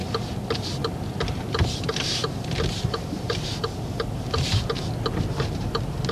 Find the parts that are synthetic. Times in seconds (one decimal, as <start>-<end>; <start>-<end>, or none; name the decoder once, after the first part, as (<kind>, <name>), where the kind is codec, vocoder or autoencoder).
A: 1.7-6.1 (vocoder, BigVGAN v2)